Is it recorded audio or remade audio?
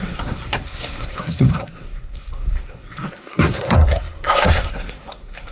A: remade